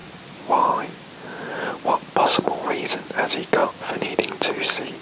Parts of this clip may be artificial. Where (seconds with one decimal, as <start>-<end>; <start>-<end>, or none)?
none